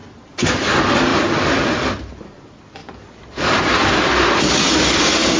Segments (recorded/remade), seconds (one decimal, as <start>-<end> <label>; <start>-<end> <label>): 0.0-0.5 remade; 0.5-1.1 recorded; 1.1-1.9 remade; 1.9-5.4 recorded